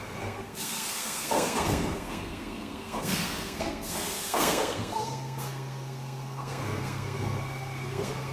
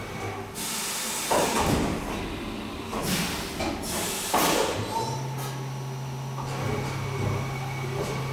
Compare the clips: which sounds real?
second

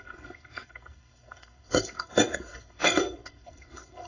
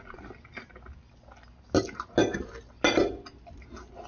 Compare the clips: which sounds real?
second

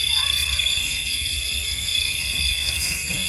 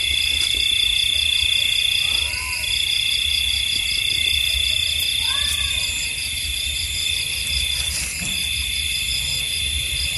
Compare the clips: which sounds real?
second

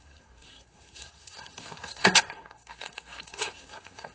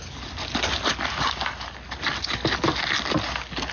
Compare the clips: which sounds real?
second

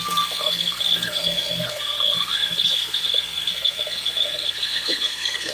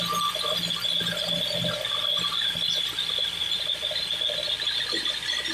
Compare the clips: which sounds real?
second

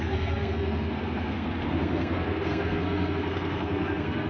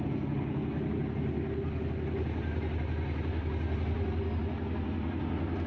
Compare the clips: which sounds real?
second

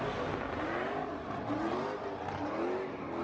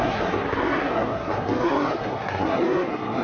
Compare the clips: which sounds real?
first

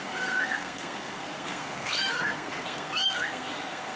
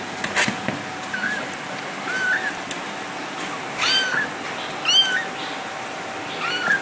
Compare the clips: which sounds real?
second